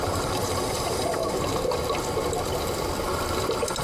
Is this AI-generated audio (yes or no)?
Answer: yes